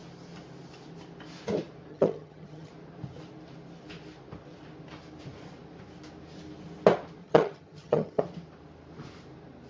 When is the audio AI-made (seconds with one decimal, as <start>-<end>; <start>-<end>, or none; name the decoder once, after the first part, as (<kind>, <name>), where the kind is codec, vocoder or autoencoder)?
1.9-2.7 (vocoder, HiFi-GAN); 7.2-8.2